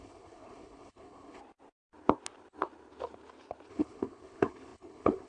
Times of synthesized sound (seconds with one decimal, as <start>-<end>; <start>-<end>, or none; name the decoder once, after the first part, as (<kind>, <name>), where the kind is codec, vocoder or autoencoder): 0.0-1.4 (codec, HILCodec); 3.7-5.3

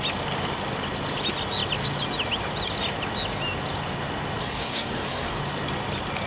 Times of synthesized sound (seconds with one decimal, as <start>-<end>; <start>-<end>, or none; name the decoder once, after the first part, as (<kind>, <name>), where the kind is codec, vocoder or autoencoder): 4.4-5.4 (codec, SNAC)

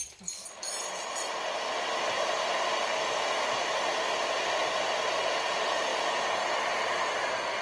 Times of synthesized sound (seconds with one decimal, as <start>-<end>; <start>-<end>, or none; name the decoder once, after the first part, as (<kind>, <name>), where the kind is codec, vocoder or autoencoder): none

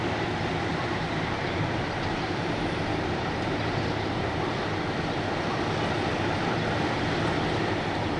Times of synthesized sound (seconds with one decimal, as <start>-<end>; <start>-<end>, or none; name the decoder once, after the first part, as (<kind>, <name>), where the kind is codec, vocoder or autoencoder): 0.7-3.6 (vocoder, BigVGAN v2)

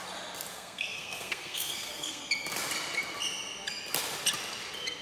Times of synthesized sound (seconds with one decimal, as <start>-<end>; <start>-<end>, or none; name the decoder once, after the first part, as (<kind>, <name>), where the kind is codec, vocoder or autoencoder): 0.5-2.2 (codec, SNAC)

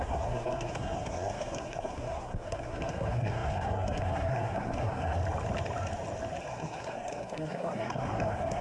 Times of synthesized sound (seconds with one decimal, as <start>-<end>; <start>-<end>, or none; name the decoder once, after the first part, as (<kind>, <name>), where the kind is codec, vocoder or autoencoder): 0.0-5.2 (codec, SNAC); 6.4-8.6

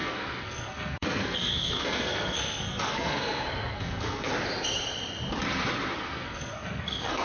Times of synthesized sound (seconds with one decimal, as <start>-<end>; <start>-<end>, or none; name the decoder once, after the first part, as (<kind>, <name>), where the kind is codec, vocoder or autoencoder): 0.0-4.3 (codec, SNAC); 6.0-7.2

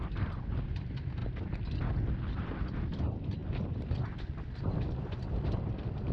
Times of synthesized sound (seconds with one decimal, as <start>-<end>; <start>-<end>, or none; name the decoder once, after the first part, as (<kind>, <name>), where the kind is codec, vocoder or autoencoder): 0.0-1.2 (vocoder, BigVGAN v2); 2.1-3.4